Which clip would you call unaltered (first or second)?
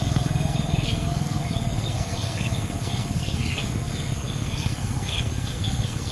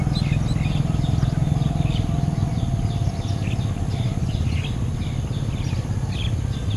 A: second